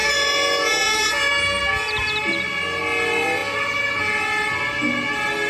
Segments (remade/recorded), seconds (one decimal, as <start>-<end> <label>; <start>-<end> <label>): 0.0-1.3 remade; 1.3-5.5 recorded